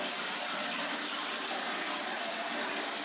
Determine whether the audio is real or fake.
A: fake